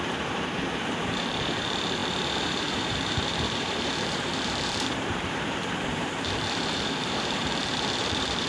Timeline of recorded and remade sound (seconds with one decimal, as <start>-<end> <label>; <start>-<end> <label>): 0.0-8.5 remade